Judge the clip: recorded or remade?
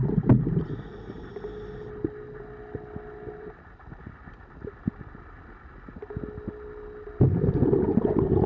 recorded